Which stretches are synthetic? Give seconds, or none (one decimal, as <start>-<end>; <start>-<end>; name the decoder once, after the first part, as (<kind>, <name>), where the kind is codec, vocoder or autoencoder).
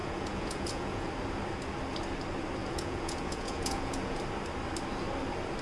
0.0-1.1 (vocoder, Vocos); 2.6-4.2